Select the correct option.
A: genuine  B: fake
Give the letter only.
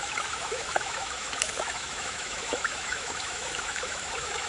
B